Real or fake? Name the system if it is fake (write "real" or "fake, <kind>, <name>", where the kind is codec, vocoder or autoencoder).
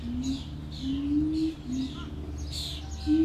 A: real